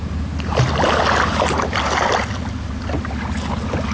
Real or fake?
real